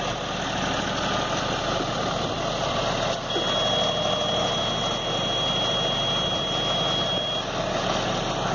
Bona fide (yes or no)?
yes